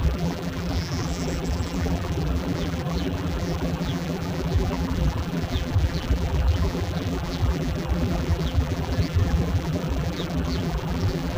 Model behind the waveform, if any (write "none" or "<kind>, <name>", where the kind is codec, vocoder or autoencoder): vocoder, BigVGAN v2